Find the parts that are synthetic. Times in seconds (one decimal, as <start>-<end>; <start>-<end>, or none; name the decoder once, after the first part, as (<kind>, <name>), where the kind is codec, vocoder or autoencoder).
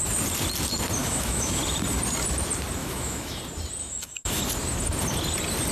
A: 1.0-1.6 (autoencoder, DAC-VAE); 2.8-3.4; 3.8-4.4